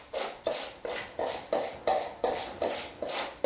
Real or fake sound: real